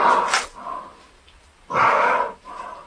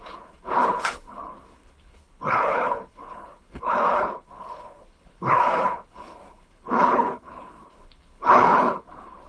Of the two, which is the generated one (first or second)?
second